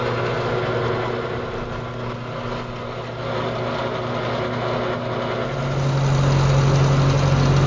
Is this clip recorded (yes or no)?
yes